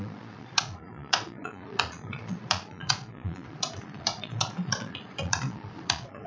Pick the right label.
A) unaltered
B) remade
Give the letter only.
B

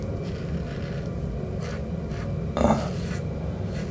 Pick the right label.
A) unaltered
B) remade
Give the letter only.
A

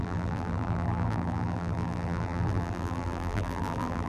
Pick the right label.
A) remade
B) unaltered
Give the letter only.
A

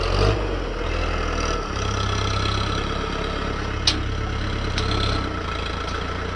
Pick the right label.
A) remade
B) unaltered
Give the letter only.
B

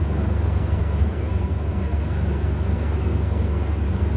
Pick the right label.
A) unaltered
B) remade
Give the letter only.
B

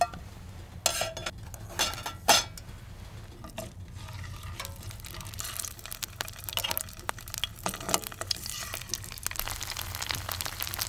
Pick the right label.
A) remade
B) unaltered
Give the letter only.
B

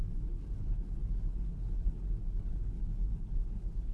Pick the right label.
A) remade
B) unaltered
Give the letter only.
A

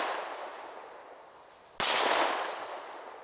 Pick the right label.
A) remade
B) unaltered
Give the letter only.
B